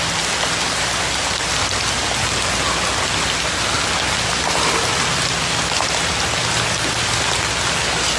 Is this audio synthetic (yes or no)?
no